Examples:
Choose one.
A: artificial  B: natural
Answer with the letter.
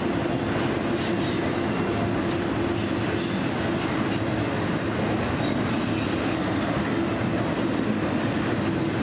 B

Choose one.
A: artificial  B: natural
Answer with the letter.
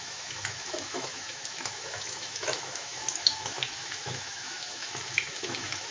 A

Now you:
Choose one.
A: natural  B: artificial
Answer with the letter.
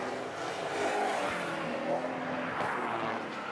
A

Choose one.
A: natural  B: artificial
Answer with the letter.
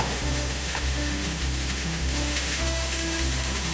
B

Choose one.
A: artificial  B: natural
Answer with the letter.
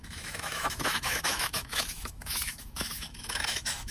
A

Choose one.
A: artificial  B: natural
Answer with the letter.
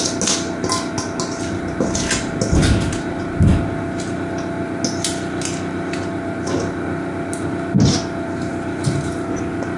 B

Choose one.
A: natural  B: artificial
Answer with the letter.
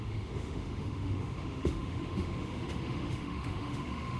B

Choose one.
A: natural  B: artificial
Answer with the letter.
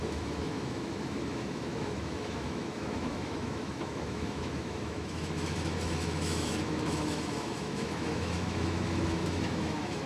B